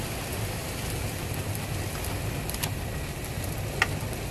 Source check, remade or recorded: recorded